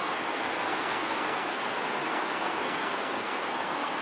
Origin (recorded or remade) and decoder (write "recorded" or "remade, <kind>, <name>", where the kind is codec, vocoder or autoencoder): remade, codec, SNAC